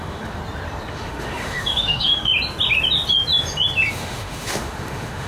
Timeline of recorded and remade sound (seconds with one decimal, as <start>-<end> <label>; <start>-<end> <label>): 0.0-0.4 remade; 0.4-0.9 recorded; 0.9-2.3 remade; 2.3-3.9 recorded; 3.9-5.3 remade